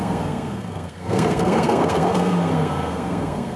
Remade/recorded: remade